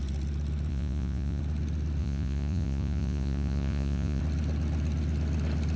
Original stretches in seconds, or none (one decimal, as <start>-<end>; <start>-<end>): 0.0-0.7; 1.4-2.0; 4.2-5.8